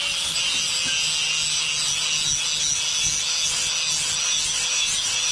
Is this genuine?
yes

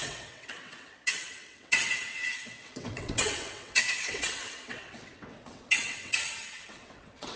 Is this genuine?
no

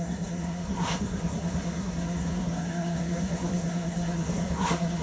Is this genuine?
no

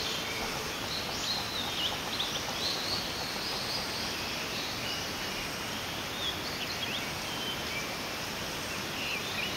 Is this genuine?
yes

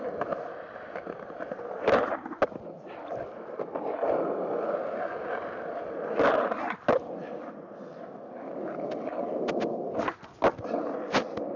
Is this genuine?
yes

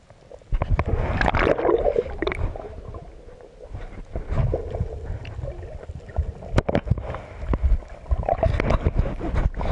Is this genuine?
yes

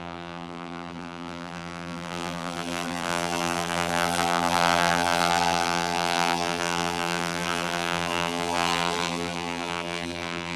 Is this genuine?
no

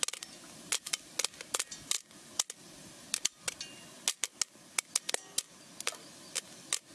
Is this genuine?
yes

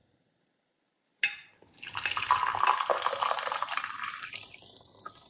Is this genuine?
yes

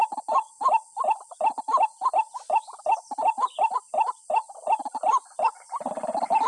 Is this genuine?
yes